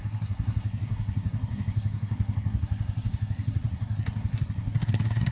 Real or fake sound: fake